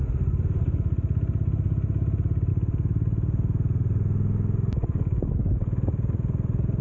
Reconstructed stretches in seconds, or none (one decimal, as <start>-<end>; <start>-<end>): none